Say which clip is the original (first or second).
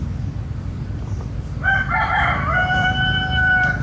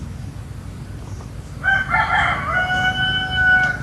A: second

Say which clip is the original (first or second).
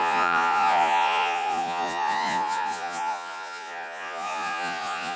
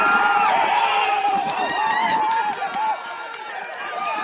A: second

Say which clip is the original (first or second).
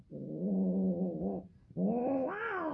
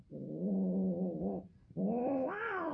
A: first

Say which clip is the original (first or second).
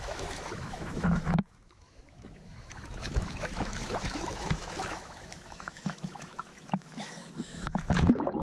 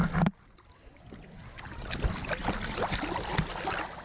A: second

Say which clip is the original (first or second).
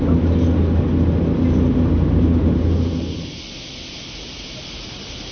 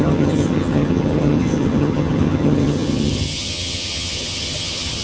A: first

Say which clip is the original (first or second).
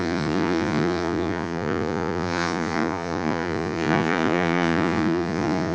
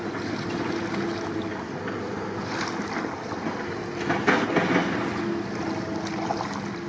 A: second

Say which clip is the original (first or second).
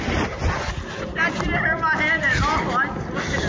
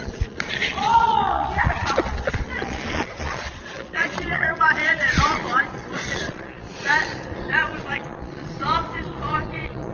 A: first